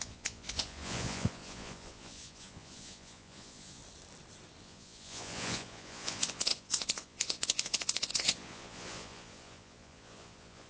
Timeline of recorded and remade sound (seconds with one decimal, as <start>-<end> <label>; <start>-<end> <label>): 0.0-3.8 remade; 3.8-4.6 recorded; 4.6-10.7 remade